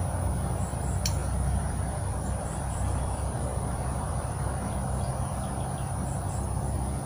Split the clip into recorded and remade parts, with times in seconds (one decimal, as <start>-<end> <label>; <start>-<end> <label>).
0.0-1.2 recorded; 1.2-5.5 remade; 5.5-7.1 recorded